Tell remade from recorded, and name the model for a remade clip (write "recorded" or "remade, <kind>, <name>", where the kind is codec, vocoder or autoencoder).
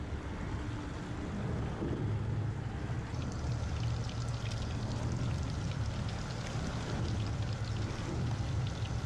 recorded